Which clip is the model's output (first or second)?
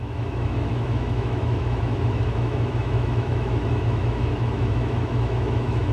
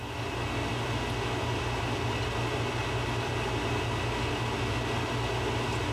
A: first